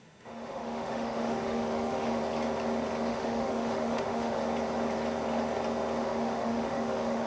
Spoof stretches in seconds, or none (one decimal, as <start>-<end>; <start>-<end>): 0.0-2.2; 3.1-4.4; 6.0-7.3